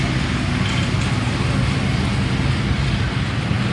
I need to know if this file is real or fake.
real